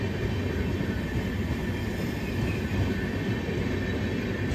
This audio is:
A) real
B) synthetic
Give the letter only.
A